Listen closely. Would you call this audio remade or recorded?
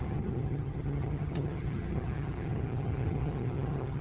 remade